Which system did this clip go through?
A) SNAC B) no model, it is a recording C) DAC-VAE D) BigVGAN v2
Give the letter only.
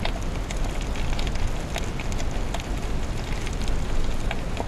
B